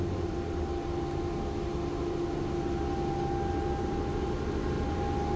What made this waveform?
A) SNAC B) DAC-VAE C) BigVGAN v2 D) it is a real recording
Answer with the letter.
D